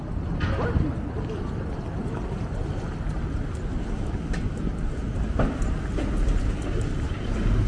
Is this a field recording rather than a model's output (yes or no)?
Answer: yes